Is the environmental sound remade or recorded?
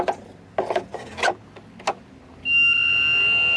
recorded